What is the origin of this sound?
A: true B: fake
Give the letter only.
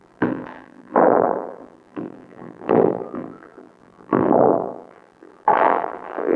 B